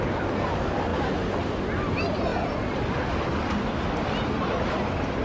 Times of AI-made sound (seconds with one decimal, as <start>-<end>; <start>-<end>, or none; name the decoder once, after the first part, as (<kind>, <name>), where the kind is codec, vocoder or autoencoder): none